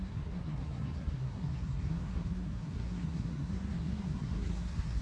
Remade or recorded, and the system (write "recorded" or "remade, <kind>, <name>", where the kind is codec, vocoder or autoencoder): remade, codec, SNAC